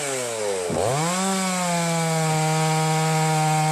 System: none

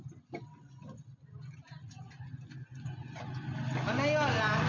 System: none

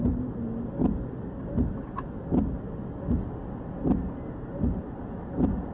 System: none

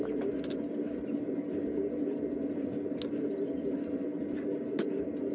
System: none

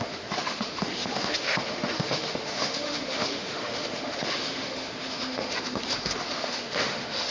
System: autoencoder, DAC-VAE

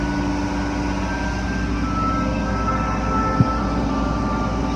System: none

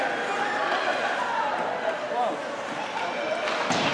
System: none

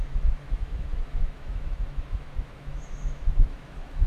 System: autoencoder, DAC-VAE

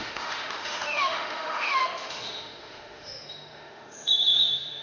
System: autoencoder, DAC-VAE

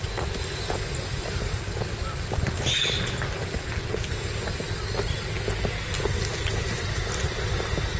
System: none